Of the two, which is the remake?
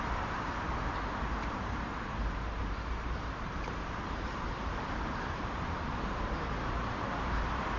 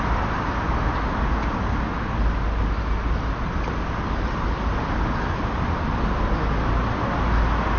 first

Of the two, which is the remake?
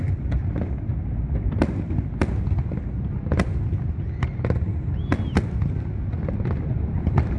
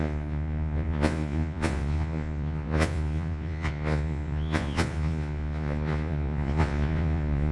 second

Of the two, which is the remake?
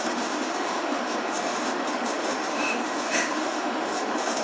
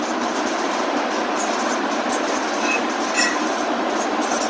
first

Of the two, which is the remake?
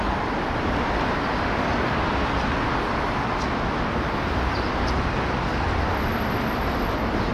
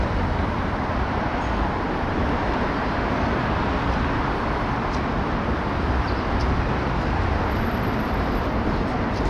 second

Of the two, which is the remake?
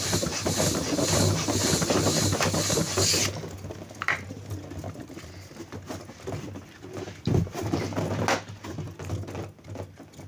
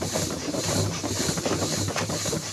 second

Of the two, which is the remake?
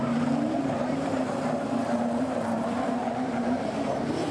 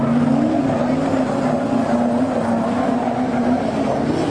first